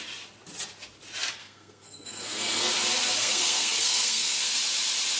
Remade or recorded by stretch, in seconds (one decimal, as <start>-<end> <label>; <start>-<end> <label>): 0.0-1.4 recorded; 1.4-2.7 remade; 2.7-3.2 recorded; 3.2-4.6 remade; 4.6-5.2 recorded